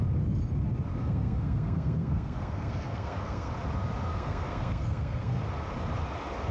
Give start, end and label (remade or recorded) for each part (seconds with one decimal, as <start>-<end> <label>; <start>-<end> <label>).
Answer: 0.0-1.0 recorded; 1.0-3.5 remade; 3.5-4.1 recorded; 4.1-5.4 remade; 5.4-6.5 recorded